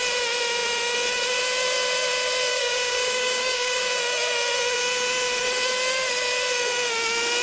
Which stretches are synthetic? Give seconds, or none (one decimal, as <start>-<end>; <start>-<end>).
2.5-3.8